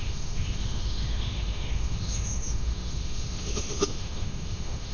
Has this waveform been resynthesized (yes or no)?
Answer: yes